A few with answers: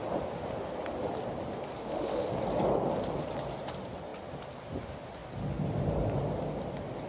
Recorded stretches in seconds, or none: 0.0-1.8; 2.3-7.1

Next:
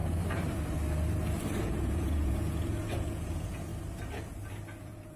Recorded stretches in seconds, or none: 0.0-1.6; 3.7-4.8

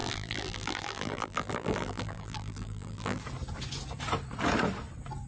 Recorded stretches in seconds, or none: 3.2-5.3